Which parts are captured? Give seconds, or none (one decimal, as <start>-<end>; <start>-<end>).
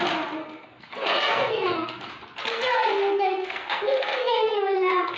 0.0-0.4; 2.1-2.5